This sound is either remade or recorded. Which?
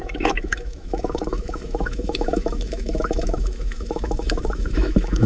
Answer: remade